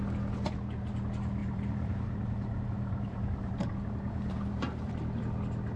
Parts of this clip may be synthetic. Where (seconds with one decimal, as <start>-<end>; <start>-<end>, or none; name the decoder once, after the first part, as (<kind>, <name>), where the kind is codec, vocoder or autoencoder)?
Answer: 1.4-4.9 (vocoder, BigVGAN v2)